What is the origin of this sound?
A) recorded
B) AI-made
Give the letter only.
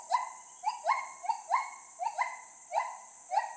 A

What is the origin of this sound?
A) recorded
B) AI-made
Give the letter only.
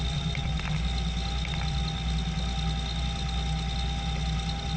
A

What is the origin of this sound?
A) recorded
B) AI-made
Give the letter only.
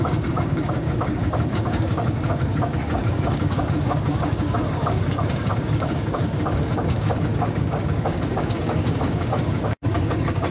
B